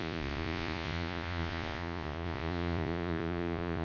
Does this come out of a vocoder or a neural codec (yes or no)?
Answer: yes